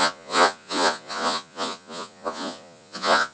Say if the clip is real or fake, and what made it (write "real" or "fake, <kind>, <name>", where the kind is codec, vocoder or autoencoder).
fake, vocoder, Vocos